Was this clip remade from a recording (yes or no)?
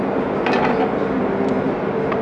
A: no